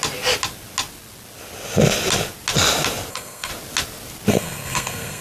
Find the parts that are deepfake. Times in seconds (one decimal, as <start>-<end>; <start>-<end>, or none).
3.1-3.5; 4.3-5.2